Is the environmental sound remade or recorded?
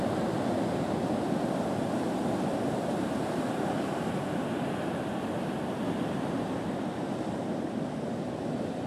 recorded